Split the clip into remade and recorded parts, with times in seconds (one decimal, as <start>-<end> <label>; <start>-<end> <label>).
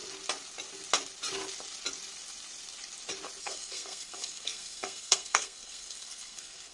0.0-3.4 recorded; 3.4-6.7 remade